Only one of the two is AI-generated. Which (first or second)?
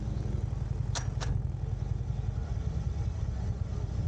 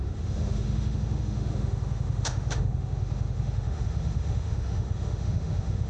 second